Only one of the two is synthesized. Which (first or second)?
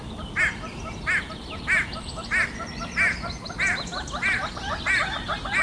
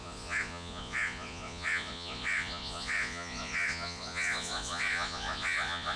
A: second